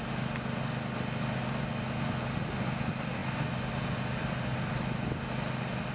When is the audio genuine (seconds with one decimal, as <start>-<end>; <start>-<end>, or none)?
0.0-5.9